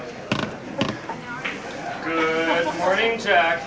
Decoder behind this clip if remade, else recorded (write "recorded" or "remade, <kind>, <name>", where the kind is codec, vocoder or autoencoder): recorded